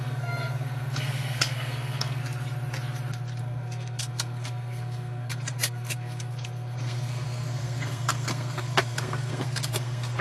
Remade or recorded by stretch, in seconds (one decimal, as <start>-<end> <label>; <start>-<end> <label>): 0.0-2.2 remade; 2.2-3.4 recorded; 3.4-10.2 remade

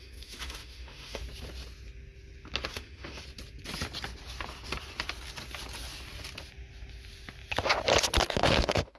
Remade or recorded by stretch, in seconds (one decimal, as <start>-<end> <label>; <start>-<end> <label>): 0.0-1.2 remade; 1.2-2.7 recorded; 2.7-3.2 remade; 3.2-8.3 recorded; 8.3-9.0 remade

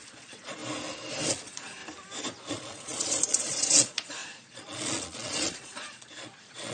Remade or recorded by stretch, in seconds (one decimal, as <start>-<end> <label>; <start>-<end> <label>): 0.0-0.6 remade; 0.6-1.3 recorded; 1.3-1.8 remade; 1.8-2.5 recorded; 2.5-6.7 remade

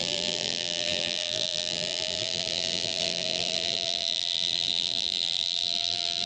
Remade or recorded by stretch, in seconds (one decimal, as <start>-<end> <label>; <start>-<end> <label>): 0.0-6.3 remade

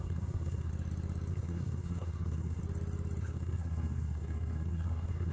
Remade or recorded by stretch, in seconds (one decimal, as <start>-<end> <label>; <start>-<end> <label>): 0.0-0.7 remade; 0.7-1.3 recorded; 1.3-2.6 remade; 2.6-3.2 recorded; 3.2-5.3 remade

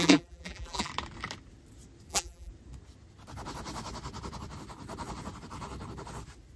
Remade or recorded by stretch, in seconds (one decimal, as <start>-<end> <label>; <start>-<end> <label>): 0.0-0.9 remade; 0.9-2.1 recorded; 2.1-2.5 remade; 2.5-6.6 recorded